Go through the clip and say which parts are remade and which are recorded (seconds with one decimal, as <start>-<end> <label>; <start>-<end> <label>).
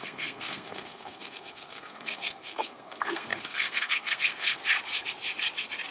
0.0-4.6 remade; 4.6-5.9 recorded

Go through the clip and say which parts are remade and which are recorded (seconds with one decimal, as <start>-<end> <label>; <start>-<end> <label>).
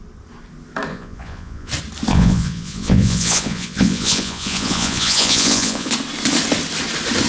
0.0-0.9 recorded; 0.9-1.7 remade; 1.7-2.1 recorded; 2.1-5.9 remade; 5.9-7.3 recorded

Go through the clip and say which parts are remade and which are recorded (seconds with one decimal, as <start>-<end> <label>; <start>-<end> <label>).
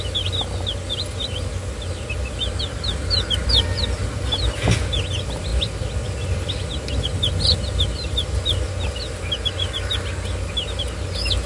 0.0-11.5 recorded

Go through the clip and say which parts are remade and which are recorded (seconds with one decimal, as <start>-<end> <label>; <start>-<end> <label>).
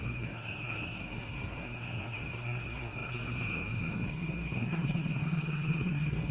0.0-6.3 remade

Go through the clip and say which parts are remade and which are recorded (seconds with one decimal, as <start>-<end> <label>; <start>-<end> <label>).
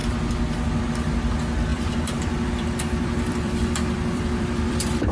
0.0-1.7 recorded; 1.7-5.1 remade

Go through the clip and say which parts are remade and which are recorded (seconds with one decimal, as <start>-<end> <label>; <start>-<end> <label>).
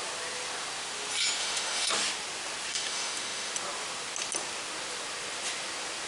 0.0-1.4 recorded; 1.4-1.9 remade; 1.9-2.7 recorded; 2.7-3.5 remade; 3.5-6.1 recorded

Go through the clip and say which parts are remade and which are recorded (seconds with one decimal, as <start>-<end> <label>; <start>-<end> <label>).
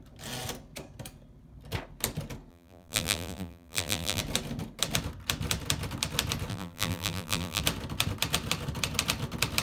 0.0-2.5 recorded; 2.5-4.2 remade; 4.2-6.5 recorded; 6.5-7.6 remade; 7.6-9.6 recorded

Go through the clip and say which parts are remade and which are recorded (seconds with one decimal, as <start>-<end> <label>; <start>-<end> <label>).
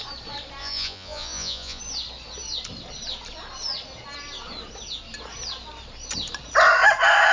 0.0-0.6 recorded; 0.6-1.8 remade; 1.8-7.3 recorded